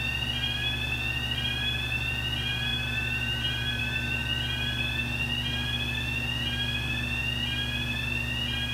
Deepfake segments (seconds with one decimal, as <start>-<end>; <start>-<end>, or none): 2.7-3.8